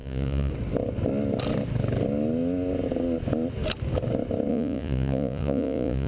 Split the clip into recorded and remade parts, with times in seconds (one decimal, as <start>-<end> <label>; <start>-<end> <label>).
0.0-0.5 remade; 0.5-4.5 recorded; 4.5-6.1 remade